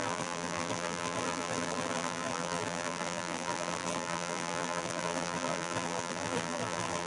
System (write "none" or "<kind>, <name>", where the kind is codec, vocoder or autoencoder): vocoder, BigVGAN v2